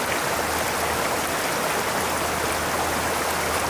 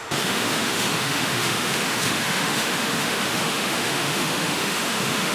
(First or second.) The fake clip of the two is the second